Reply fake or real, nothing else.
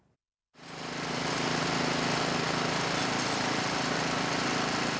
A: real